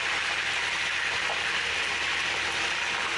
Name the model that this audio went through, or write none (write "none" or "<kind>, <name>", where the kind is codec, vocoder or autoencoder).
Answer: none